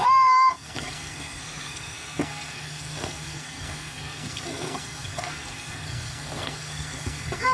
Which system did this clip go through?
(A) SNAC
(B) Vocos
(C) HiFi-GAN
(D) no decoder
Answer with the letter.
A